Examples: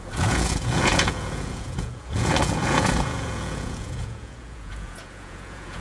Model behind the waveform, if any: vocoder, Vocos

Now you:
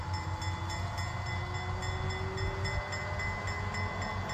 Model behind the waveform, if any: none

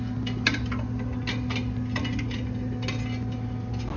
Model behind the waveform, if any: none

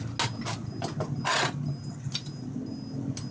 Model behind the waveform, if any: none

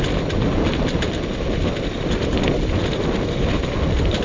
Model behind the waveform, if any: none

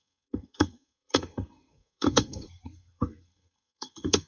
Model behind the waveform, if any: codec, SNAC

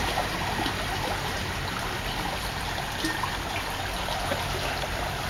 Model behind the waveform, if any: none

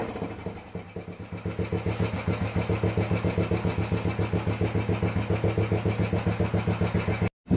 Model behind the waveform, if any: none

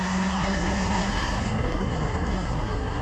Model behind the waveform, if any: codec, SNAC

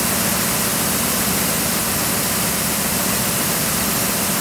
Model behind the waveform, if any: none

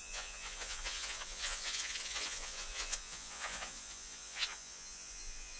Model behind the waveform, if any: vocoder, Vocos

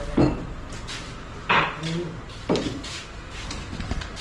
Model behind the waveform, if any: none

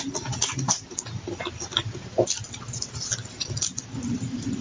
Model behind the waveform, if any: none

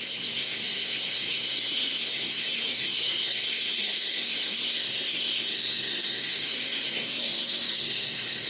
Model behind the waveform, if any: codec, SNAC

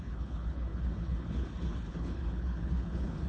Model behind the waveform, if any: codec, HILCodec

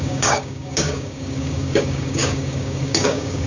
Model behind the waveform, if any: codec, DAC